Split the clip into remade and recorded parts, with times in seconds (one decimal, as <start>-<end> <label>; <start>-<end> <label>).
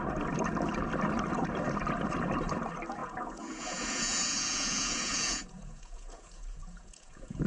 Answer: 0.0-3.0 recorded; 3.0-7.5 remade